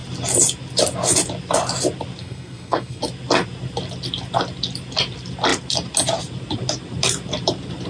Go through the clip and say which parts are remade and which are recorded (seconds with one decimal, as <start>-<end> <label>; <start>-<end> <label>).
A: 0.0-2.2 recorded; 2.2-3.0 remade; 3.0-7.9 recorded